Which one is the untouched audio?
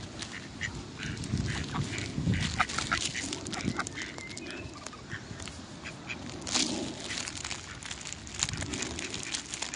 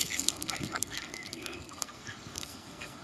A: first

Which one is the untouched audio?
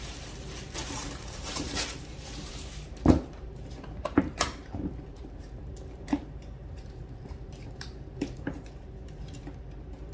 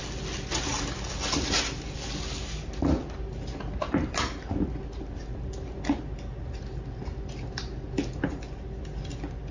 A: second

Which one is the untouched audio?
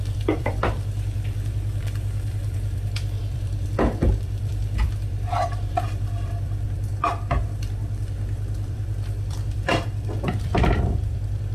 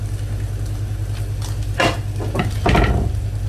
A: second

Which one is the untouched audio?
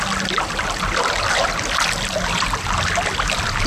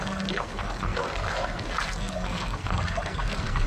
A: first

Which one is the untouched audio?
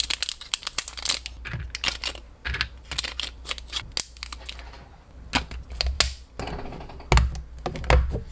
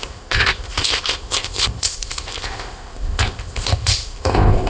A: first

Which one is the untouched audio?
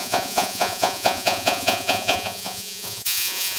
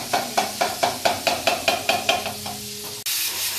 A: second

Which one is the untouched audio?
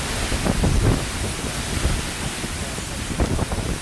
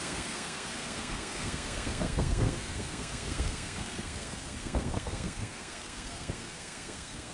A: first